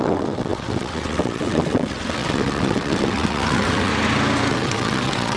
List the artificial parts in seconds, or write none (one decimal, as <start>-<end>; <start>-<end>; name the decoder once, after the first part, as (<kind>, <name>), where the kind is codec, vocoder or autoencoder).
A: 0.0-3.9 (vocoder, WaveNeXt); 4.5-5.4